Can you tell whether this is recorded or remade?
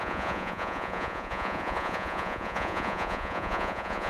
remade